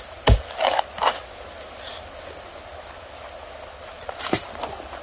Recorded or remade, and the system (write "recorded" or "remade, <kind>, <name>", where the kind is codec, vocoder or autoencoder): recorded